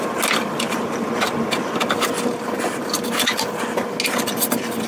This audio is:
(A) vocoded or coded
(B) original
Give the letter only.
B